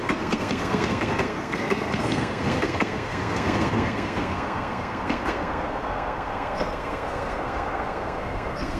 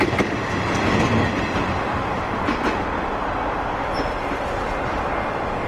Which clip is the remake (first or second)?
first